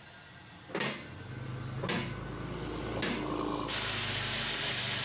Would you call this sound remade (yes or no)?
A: no